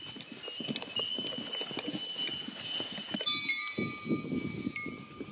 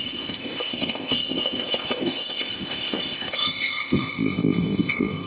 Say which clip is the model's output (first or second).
second